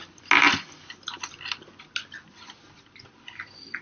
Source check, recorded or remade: recorded